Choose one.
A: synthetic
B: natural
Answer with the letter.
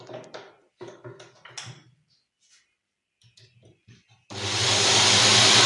B